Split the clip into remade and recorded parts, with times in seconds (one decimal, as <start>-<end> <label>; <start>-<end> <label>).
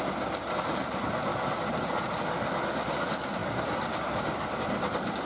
0.0-5.3 recorded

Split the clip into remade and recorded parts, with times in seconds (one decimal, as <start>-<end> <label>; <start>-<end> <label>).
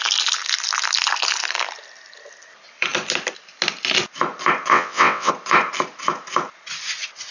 0.0-4.7 recorded; 4.7-5.3 remade; 5.3-7.3 recorded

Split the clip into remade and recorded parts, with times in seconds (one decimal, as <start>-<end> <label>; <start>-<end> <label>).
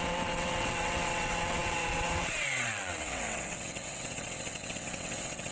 0.0-5.5 remade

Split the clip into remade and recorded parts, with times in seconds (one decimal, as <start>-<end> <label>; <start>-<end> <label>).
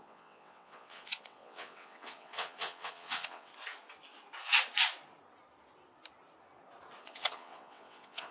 0.0-3.5 remade; 3.5-7.0 recorded; 7.0-8.3 remade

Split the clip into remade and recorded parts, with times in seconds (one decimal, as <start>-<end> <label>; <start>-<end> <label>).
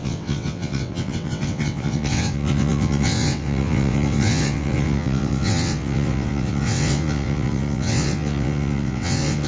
0.0-9.5 remade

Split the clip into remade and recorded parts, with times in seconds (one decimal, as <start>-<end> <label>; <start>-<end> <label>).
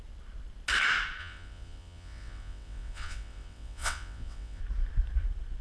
0.0-1.2 recorded; 1.2-4.6 remade; 4.6-5.6 recorded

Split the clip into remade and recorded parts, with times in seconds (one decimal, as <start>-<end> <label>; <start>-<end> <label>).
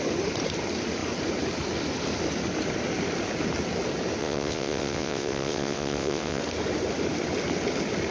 0.0-4.2 recorded; 4.2-6.4 remade; 6.4-8.1 recorded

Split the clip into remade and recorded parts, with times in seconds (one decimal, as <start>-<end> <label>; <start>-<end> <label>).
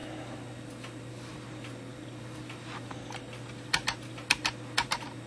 0.0-5.3 recorded